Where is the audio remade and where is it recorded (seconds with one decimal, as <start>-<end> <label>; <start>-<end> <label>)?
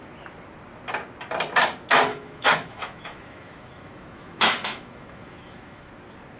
0.0-2.1 recorded; 2.1-5.9 remade; 5.9-6.4 recorded